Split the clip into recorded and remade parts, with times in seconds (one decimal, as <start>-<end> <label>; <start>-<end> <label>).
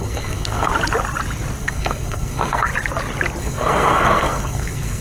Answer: 0.0-0.7 remade; 0.7-1.6 recorded; 1.6-2.7 remade; 2.7-3.4 recorded; 3.4-5.0 remade